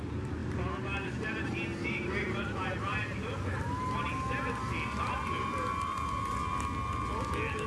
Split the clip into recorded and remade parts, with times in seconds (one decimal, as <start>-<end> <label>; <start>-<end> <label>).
0.0-7.7 recorded